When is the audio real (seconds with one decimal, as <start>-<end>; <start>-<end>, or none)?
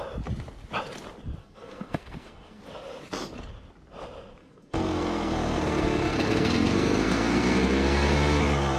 0.0-1.4; 2.6-4.4; 8.4-8.8